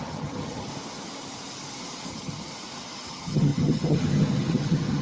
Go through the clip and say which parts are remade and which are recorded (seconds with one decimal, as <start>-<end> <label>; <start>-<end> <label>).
0.0-0.7 remade; 0.7-2.1 recorded; 2.1-2.5 remade; 2.5-3.1 recorded; 3.1-5.0 remade

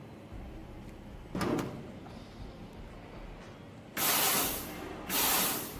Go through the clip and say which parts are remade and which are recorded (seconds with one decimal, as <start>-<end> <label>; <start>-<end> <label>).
0.0-5.8 recorded